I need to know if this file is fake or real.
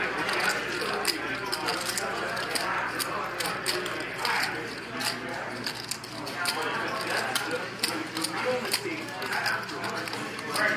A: real